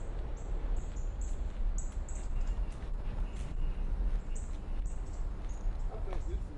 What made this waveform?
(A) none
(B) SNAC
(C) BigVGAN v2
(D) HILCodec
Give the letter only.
A